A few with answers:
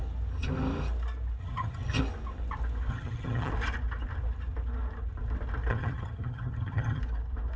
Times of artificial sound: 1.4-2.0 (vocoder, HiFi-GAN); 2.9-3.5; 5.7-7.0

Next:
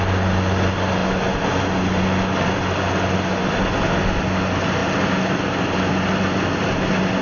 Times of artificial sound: none

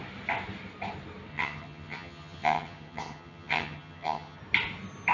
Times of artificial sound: 1.3-4.4 (vocoder, HiFi-GAN)

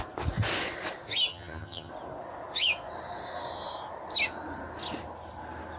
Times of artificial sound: 1.3-1.9 (vocoder, HiFi-GAN)

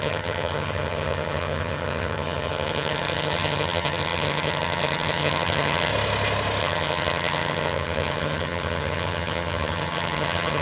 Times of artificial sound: 0.0-5.9 (vocoder, HiFi-GAN); 6.6-10.6

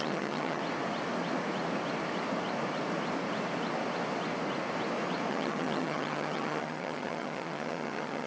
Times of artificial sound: 0.0-0.6 (vocoder, HiFi-GAN); 5.3-8.3